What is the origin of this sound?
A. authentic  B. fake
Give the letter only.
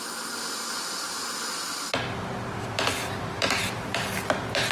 A